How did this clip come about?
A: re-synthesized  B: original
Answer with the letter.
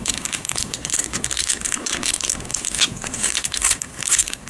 A